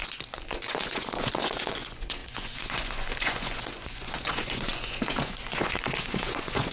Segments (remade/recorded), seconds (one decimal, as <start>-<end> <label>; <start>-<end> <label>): 0.0-6.7 remade